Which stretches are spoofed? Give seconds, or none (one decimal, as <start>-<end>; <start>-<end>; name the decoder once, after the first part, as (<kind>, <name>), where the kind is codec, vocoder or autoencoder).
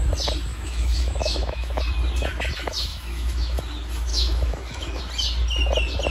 0.5-1.8 (autoencoder, DAC-VAE); 2.9-3.6; 4.1-5.0